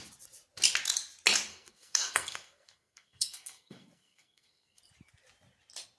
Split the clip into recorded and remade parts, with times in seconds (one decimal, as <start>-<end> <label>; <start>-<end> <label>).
0.0-1.5 recorded; 1.5-4.8 remade; 4.8-6.0 recorded